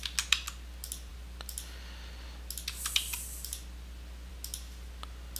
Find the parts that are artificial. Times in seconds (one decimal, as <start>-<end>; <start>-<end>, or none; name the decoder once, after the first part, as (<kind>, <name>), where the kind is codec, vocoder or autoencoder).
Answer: none